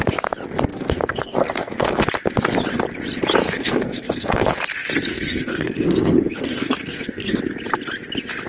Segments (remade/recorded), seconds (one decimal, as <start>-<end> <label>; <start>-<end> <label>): 0.0-0.7 recorded; 0.7-2.0 remade; 2.0-3.4 recorded; 3.4-4.5 remade; 4.5-5.1 recorded; 5.1-7.4 remade; 7.4-8.5 recorded